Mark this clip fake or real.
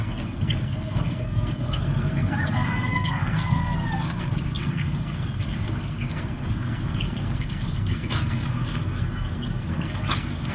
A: fake